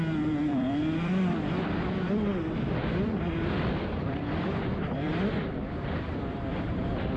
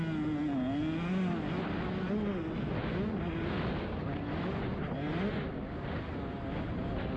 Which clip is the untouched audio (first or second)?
second